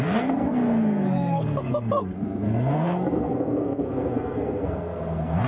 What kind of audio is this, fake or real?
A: fake